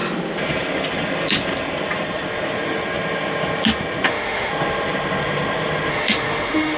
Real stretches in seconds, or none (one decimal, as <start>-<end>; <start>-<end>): 0.0-4.1; 4.5-5.9